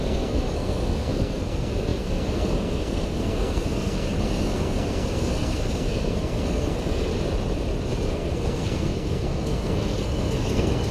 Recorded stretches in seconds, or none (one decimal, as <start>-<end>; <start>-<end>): 7.1-8.1